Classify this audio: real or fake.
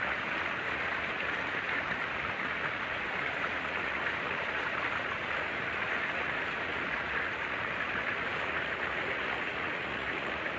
fake